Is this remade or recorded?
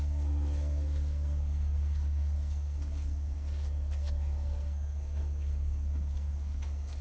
remade